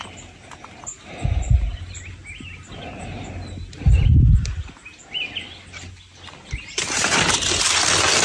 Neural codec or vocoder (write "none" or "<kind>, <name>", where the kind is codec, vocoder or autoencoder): none